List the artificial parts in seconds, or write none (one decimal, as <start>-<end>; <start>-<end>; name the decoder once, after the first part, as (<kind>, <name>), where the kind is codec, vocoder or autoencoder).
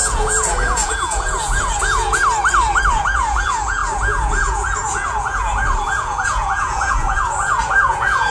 0.0-2.2 (vocoder, Vocos); 2.9-8.3